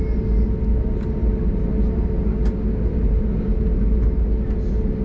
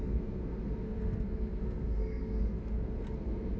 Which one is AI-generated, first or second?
second